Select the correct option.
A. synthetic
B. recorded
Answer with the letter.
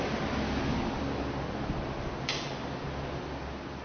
B